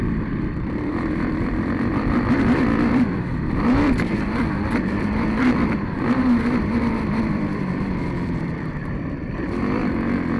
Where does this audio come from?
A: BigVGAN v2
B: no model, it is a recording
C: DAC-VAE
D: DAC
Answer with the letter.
A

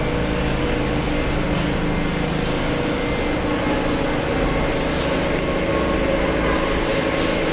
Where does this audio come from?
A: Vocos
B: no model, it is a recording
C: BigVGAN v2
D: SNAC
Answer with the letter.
B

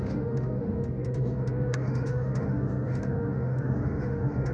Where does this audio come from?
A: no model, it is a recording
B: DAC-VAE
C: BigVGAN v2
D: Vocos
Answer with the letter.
B